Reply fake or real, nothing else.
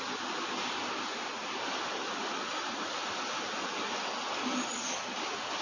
real